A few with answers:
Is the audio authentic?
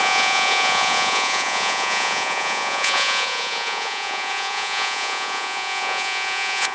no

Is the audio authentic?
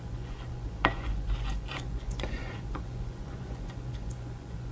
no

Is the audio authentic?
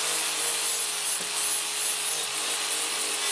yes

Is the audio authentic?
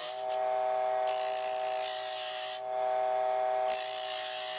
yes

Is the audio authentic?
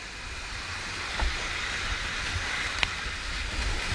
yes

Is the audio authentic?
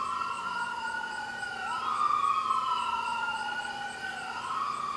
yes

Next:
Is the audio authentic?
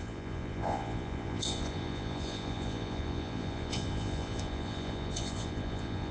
no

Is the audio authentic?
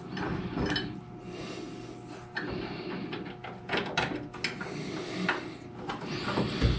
yes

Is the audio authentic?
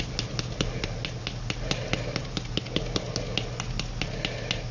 yes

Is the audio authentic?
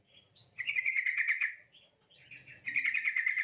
no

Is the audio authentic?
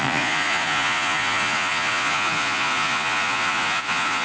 no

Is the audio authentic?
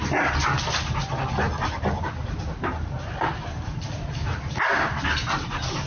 yes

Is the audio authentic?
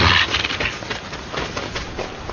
yes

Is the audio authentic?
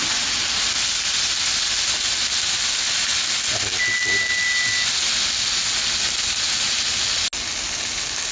yes